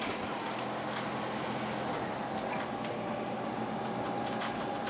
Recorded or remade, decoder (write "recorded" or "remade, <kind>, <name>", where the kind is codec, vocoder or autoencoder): recorded